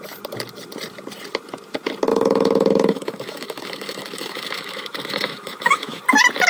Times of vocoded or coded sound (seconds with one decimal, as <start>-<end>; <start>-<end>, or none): 2.1-6.0